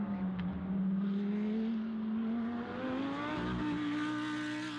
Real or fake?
real